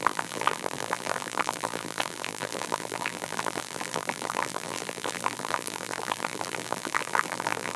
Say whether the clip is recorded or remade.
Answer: remade